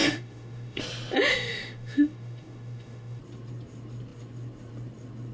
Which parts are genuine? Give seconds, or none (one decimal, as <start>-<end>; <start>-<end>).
0.8-1.3; 3.2-5.3

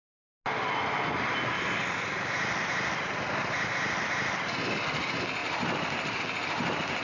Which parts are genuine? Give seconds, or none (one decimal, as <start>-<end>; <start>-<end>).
0.0-7.0